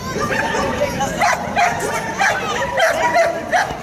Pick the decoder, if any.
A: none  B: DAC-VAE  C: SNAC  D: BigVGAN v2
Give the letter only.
A